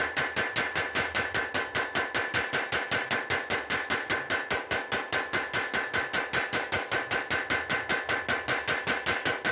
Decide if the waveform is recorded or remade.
recorded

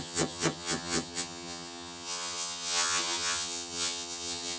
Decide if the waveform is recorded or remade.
remade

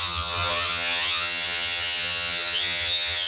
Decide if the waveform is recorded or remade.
remade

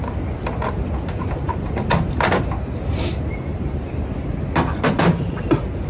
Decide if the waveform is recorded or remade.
recorded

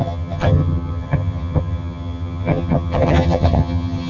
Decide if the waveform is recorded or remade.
remade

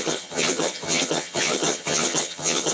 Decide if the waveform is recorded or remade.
remade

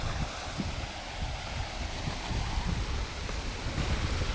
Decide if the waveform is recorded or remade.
recorded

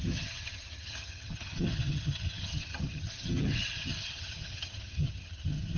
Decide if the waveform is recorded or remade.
remade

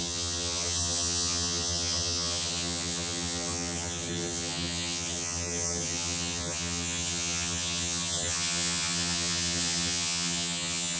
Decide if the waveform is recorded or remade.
remade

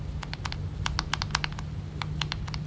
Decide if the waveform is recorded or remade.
recorded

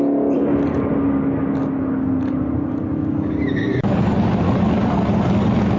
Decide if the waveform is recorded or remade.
recorded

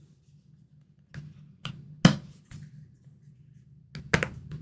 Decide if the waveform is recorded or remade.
recorded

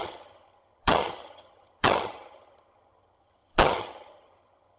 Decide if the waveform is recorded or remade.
remade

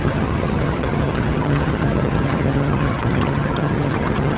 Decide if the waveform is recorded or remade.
remade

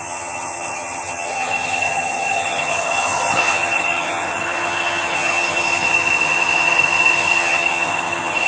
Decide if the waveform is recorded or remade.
remade